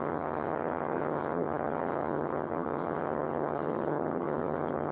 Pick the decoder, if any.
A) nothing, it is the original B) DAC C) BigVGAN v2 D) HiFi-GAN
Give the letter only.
D